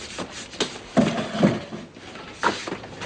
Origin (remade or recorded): recorded